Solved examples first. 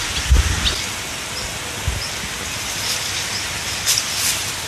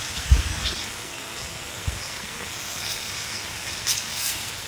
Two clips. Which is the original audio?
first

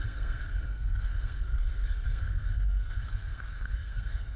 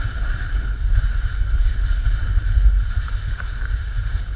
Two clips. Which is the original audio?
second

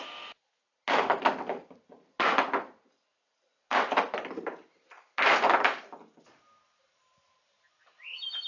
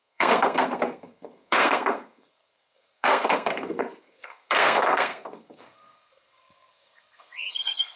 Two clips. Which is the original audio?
first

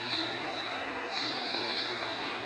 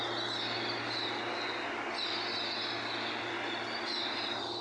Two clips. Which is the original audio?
second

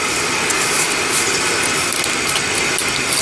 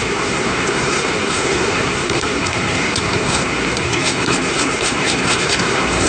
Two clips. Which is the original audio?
first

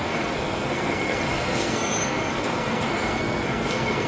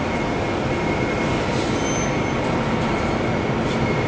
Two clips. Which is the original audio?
second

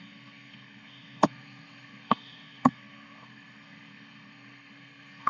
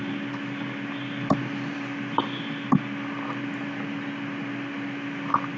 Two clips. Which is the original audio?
second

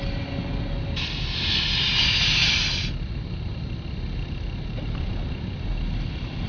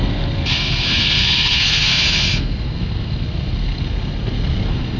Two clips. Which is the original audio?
first